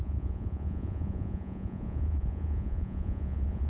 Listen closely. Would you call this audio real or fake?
fake